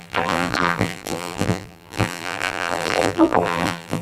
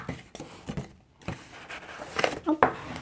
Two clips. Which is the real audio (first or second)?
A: second